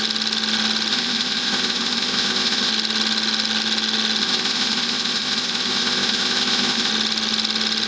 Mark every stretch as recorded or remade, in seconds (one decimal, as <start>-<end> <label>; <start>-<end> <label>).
0.0-0.9 recorded; 0.9-2.7 remade; 2.7-4.2 recorded; 4.2-6.9 remade; 6.9-7.9 recorded